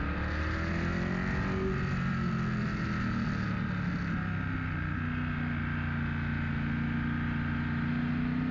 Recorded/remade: recorded